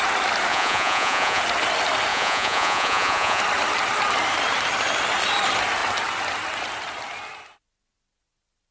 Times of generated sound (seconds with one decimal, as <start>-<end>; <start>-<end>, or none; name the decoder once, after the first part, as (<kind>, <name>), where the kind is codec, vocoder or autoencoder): 0.5-1.4 (vocoder, Vocos); 2.1-3.4